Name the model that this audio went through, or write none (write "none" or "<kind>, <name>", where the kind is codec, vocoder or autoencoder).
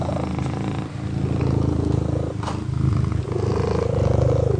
none